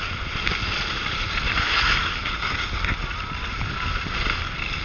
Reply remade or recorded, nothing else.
recorded